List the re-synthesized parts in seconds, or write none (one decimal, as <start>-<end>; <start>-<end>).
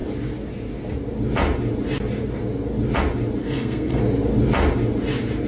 3.4-4.0